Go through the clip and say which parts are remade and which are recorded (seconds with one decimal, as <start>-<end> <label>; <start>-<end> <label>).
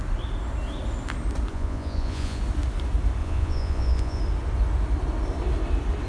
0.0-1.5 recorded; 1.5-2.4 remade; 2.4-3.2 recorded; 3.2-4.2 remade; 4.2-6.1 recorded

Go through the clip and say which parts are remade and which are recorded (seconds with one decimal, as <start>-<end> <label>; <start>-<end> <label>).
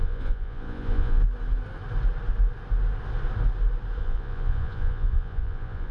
0.0-1.2 remade; 1.2-4.0 recorded; 4.0-5.9 remade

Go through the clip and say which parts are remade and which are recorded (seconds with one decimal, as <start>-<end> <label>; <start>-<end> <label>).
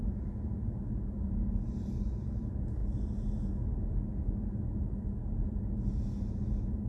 0.0-6.9 recorded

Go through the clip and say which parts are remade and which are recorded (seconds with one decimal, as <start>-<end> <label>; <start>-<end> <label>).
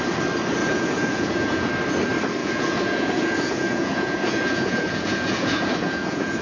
0.0-0.6 recorded; 0.6-1.7 remade; 1.7-2.4 recorded; 2.4-6.4 remade